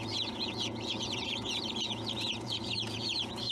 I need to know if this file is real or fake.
fake